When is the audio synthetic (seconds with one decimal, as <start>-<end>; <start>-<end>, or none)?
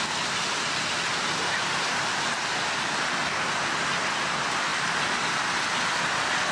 none